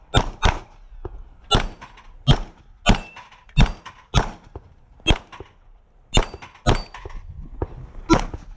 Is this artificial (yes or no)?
no